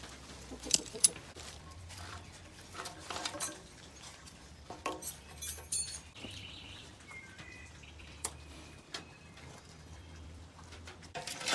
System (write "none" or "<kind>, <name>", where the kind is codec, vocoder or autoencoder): vocoder, BigVGAN v2